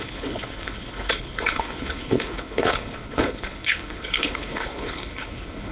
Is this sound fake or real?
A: fake